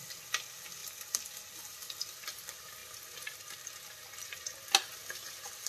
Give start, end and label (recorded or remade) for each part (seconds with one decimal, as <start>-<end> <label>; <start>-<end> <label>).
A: 0.0-5.7 recorded